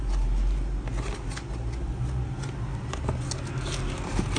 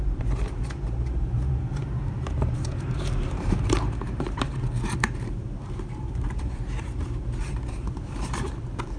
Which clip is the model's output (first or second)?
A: second